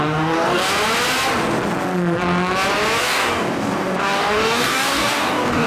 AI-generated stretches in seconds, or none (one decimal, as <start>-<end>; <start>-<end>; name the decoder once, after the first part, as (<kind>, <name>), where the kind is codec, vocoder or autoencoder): 0.0-0.6 (codec, DAC); 3.0-5.7

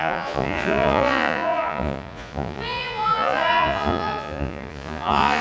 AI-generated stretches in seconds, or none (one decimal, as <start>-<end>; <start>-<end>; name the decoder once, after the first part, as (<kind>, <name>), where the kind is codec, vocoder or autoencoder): 0.0-5.4 (vocoder, Vocos)

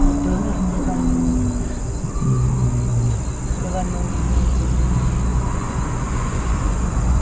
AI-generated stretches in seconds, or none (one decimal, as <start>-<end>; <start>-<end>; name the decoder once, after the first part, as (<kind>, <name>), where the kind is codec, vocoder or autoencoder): 5.3-7.2 (vocoder, Vocos)